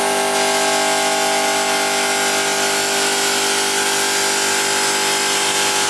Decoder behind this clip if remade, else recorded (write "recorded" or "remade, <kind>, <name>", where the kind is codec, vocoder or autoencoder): recorded